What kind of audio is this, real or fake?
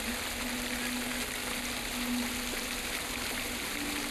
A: real